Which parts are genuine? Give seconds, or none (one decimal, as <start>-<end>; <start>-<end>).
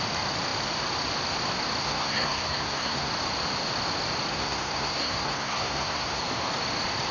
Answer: 0.0-1.8; 3.1-4.3; 6.2-7.1